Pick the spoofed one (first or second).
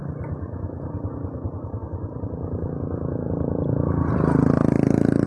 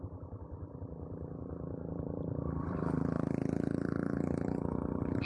second